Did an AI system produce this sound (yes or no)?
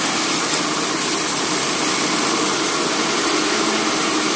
no